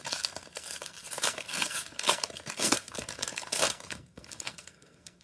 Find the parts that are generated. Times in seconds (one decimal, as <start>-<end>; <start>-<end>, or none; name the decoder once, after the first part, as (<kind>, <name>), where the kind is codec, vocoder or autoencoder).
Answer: 0.0-5.2 (codec, SNAC)